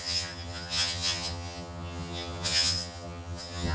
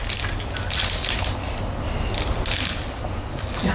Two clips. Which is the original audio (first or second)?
second